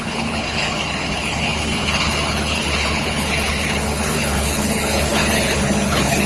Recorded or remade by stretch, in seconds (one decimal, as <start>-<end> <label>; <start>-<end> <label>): 0.0-6.3 remade